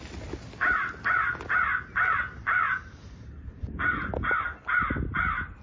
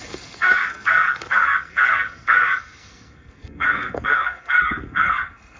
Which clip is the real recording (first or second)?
first